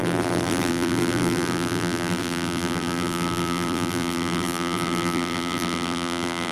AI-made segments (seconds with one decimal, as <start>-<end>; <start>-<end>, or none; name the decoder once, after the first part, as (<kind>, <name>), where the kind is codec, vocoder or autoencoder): 0.0-6.5 (vocoder, BigVGAN v2)